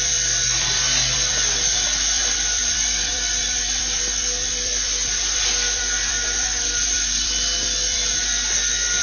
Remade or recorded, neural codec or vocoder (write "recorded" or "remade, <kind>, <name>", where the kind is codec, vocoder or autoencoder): remade, vocoder, BigVGAN v2